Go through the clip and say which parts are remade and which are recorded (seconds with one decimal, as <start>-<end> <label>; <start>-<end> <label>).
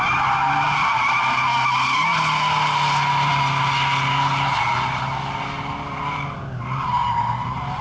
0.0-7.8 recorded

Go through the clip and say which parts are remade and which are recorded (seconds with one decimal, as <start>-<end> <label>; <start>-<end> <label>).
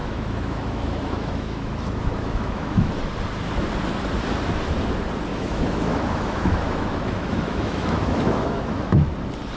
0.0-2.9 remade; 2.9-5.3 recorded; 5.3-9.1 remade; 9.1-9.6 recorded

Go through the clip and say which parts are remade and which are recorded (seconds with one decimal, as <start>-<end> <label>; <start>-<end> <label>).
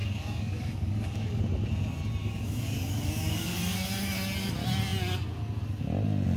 0.0-1.4 remade; 1.4-2.2 recorded; 2.2-3.6 remade; 3.6-6.4 recorded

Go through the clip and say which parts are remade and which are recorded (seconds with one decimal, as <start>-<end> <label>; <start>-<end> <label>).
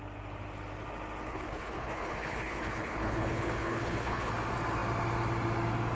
0.0-1.3 recorded; 1.3-4.3 remade; 4.3-5.9 recorded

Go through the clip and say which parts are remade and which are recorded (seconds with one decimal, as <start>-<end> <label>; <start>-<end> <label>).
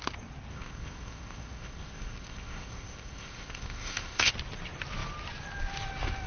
0.0-0.5 recorded; 0.5-4.3 remade; 4.3-6.3 recorded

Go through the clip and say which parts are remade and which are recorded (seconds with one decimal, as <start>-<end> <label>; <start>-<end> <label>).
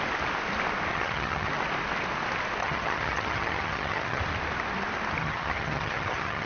0.0-0.9 recorded; 0.9-1.5 remade; 1.5-2.6 recorded; 2.6-4.2 remade; 4.2-5.2 recorded; 5.2-6.5 remade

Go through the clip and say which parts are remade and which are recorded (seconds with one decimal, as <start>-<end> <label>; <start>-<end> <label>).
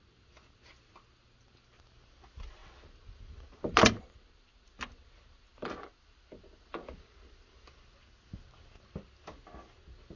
0.0-10.2 recorded